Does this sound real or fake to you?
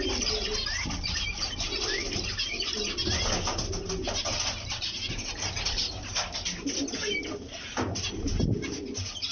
real